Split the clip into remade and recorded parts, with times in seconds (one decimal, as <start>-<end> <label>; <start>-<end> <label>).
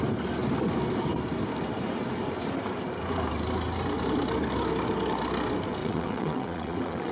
0.0-5.8 recorded; 5.8-7.1 remade